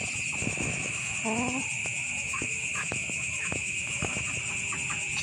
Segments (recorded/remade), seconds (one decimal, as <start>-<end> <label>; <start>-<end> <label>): 0.0-0.4 recorded; 0.4-1.1 remade; 1.1-1.8 recorded; 1.8-4.3 remade; 4.3-5.2 recorded